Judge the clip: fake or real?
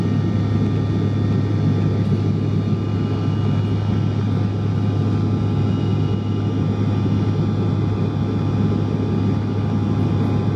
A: real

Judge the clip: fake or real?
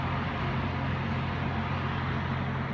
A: real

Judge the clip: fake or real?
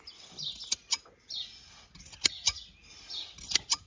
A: real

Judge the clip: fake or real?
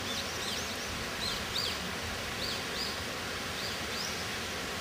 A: real